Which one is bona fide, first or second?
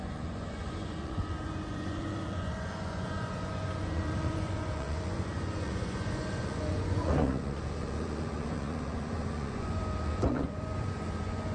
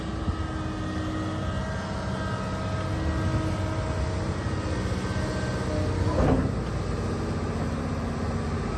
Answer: second